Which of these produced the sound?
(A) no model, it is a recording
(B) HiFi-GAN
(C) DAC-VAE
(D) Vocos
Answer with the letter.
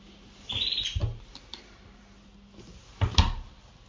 A